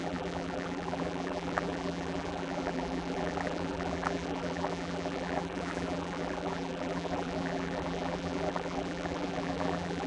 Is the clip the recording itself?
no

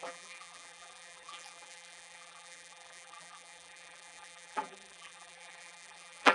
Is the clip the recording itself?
no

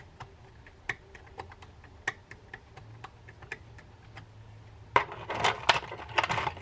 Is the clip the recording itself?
yes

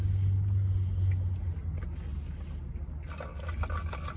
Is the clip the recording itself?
yes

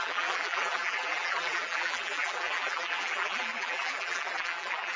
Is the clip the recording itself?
no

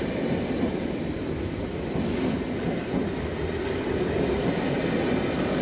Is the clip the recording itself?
no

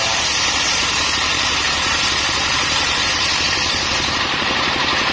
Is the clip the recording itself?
no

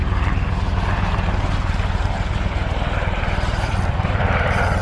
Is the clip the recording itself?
no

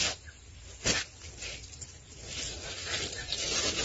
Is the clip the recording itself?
yes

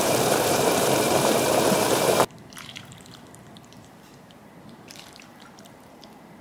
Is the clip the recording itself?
no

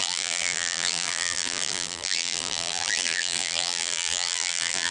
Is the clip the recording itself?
no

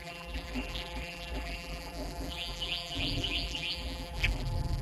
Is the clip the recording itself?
no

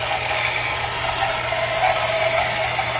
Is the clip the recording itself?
yes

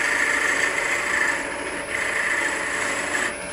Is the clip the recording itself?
yes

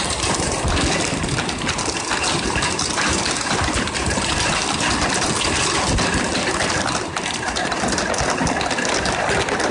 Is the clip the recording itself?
no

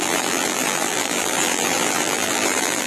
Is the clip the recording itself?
no